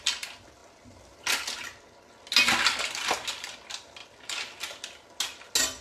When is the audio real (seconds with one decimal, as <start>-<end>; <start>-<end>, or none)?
0.0-5.8